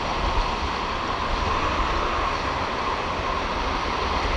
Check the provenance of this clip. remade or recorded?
recorded